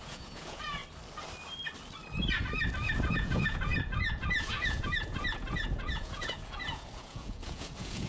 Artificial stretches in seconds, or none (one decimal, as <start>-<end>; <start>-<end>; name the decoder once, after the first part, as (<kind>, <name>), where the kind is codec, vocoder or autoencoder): 0.0-0.8 (vocoder, Vocos); 3.1-8.1